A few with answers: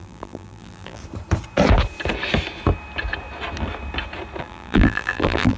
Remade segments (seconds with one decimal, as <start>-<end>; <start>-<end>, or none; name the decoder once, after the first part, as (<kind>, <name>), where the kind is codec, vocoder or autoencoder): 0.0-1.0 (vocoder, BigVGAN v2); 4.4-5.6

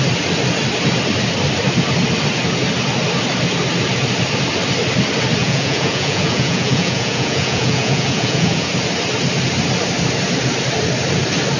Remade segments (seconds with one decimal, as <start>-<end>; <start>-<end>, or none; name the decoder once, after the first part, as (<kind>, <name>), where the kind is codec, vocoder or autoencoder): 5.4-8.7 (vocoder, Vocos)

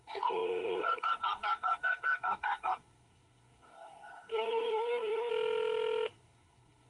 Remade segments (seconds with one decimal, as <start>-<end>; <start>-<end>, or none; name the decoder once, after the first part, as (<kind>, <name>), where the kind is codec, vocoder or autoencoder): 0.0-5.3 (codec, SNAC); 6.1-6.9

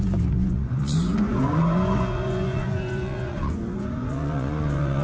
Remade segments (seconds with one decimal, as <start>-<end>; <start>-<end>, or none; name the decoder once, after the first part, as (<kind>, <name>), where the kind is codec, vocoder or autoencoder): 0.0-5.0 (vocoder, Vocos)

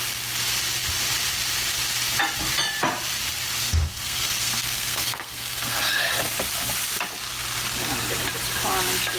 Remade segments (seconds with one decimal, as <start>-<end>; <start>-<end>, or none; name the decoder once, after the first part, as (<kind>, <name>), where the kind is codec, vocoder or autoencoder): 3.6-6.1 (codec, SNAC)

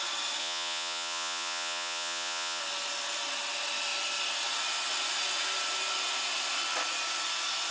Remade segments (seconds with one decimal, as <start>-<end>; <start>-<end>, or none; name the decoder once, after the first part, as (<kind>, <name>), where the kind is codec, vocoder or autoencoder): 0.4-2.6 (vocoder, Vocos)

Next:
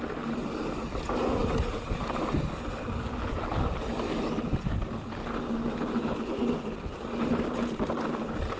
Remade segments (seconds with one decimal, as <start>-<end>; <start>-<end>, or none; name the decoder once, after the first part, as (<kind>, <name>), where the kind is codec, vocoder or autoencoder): none

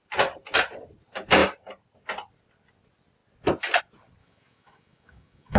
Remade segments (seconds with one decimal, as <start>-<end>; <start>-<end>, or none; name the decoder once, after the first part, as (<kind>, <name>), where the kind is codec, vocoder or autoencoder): 4.2-5.6 (autoencoder, DAC-VAE)